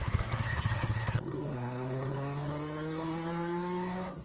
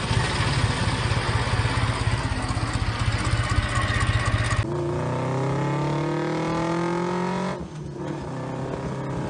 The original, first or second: second